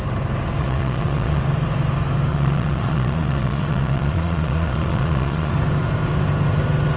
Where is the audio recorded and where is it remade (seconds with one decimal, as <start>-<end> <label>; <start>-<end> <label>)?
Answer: 0.0-0.6 recorded; 0.6-1.4 remade; 1.4-2.3 recorded; 2.3-5.5 remade; 5.5-7.0 recorded